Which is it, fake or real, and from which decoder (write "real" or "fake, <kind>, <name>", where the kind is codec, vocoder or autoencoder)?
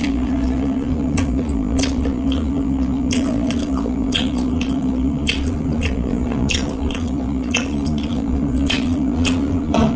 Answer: fake, vocoder, Vocos